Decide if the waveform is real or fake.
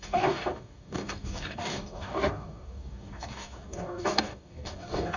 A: fake